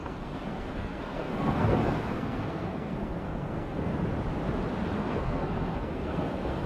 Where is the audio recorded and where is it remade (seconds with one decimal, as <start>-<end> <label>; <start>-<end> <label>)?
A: 0.0-3.9 remade; 3.9-5.0 recorded; 5.0-6.7 remade